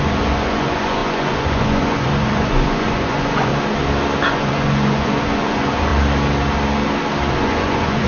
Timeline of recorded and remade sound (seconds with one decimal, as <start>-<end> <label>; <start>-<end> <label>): 0.0-3.5 remade; 3.5-4.3 recorded; 4.3-5.9 remade; 5.9-7.3 recorded; 7.3-8.1 remade